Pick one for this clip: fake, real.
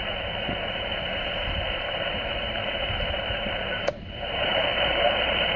fake